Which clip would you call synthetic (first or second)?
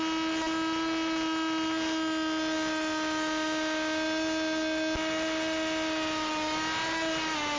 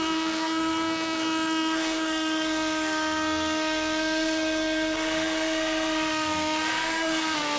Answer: second